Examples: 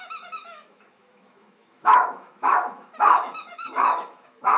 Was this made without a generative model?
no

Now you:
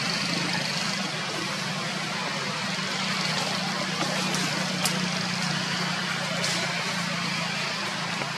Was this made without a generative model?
yes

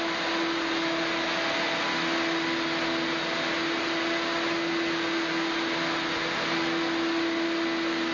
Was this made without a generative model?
yes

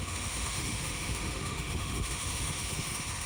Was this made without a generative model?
no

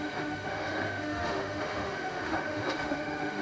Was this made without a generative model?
no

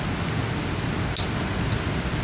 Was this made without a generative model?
yes